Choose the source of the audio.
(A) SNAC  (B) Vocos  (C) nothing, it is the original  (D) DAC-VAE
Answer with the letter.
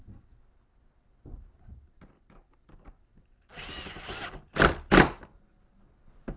C